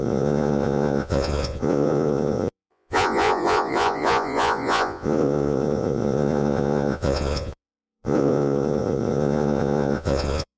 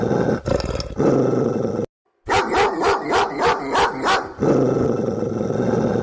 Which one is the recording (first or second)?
second